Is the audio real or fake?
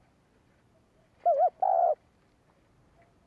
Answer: real